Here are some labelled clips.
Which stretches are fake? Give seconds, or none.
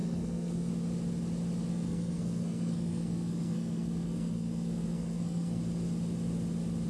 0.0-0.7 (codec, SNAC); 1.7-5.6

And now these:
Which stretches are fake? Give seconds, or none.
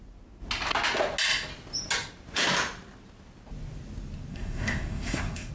4.3-5.5 (codec, SNAC)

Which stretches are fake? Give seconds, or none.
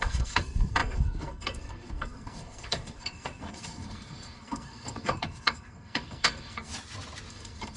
0.0-6.7 (codec, SNAC); 7.3-7.8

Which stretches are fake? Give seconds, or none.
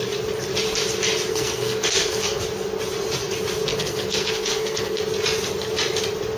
1.3-2.4 (codec, SNAC); 3.7-5.0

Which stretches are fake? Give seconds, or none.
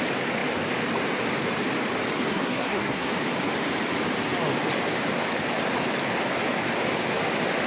2.3-3.1 (codec, SNAC)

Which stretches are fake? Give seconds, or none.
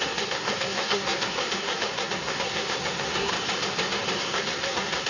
0.0-3.3 (codec, SNAC); 4.2-5.1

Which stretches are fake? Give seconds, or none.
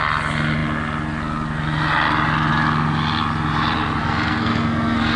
4.0-5.2 (codec, SNAC)